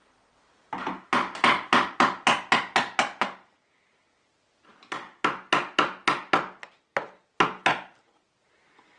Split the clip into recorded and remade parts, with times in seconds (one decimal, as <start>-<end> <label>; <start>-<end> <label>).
0.0-9.0 recorded

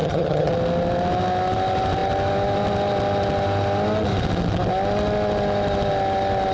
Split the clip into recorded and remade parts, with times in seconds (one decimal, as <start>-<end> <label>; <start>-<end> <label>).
0.0-0.5 remade; 0.5-6.5 recorded

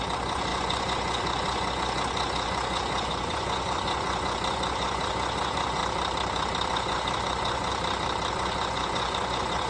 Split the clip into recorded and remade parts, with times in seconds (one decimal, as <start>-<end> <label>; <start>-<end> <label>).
0.0-5.8 remade; 5.8-6.7 recorded; 6.7-7.7 remade; 7.7-8.3 recorded; 8.3-9.7 remade